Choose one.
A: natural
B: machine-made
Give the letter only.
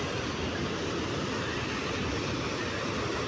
A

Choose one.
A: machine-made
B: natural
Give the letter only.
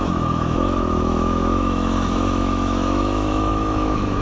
A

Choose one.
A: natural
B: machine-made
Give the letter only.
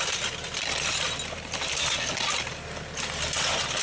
A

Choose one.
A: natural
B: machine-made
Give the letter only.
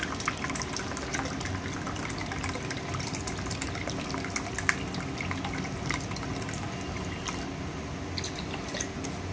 A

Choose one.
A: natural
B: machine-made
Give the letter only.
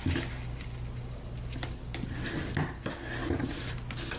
A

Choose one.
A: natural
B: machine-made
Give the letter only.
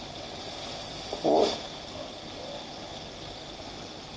A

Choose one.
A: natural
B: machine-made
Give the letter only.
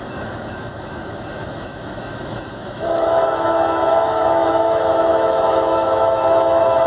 B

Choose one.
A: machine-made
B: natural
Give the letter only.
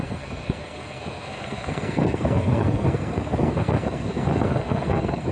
A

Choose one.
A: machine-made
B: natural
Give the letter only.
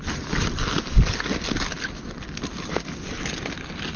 B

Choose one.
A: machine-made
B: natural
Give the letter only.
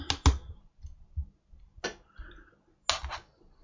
B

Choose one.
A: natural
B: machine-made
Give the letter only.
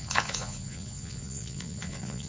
B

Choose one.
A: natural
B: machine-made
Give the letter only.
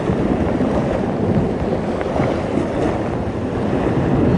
A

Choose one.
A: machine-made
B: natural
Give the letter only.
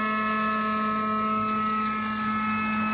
B